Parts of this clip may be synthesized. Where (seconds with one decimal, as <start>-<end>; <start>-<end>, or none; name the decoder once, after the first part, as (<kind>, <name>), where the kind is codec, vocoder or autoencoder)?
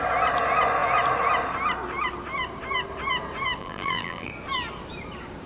3.6-4.3 (vocoder, BigVGAN v2)